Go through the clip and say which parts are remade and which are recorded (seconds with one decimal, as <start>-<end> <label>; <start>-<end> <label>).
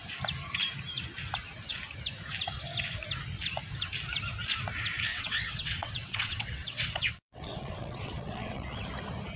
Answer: 0.0-5.1 recorded; 5.1-8.8 remade; 8.8-9.4 recorded